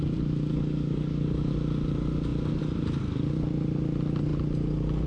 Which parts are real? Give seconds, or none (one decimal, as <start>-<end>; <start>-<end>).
0.0-0.5; 1.5-5.1